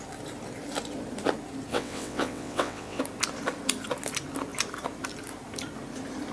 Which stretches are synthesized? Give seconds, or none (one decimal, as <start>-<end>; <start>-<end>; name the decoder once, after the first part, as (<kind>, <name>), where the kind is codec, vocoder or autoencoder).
1.7-3.0 (vocoder, WaveNeXt)